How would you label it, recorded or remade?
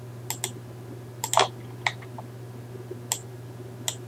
recorded